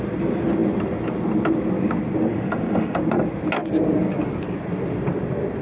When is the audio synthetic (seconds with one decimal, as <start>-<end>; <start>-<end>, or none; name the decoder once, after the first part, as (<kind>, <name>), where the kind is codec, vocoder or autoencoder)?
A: 2.3-3.0 (autoencoder, DAC-VAE)